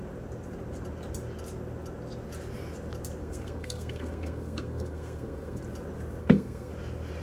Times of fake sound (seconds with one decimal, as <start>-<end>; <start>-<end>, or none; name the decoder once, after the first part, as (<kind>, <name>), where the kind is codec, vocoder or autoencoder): 3.2-5.6 (codec, SNAC); 6.2-6.7